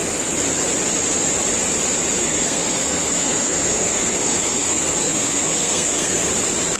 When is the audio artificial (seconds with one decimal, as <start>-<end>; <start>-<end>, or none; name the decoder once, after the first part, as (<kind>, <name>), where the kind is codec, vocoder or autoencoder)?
2.2-6.3 (codec, SNAC)